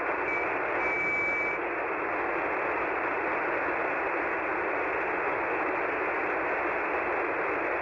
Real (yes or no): yes